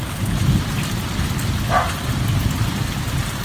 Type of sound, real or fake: real